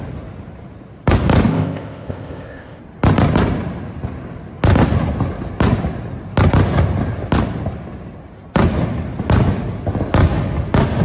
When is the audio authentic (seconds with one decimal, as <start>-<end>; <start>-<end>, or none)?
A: 0.0-1.5; 2.8-11.0